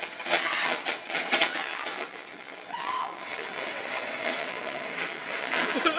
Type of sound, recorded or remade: remade